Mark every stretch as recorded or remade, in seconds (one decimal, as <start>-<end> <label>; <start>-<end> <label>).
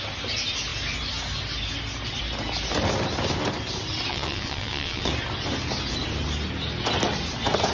0.0-4.1 recorded; 4.1-5.1 remade; 5.1-7.7 recorded